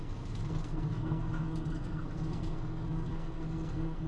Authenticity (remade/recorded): remade